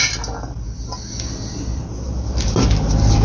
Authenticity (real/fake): real